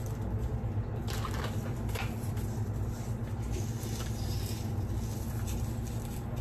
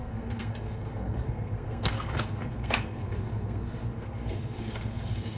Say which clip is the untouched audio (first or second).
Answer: first